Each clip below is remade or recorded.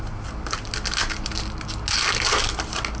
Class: recorded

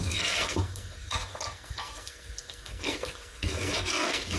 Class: remade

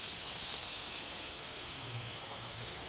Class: remade